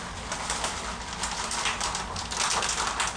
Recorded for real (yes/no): yes